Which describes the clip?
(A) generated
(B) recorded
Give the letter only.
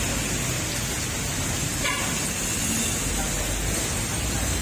B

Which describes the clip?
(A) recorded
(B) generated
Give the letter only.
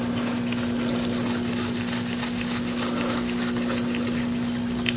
A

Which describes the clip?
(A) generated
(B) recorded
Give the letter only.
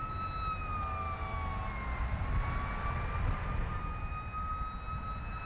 B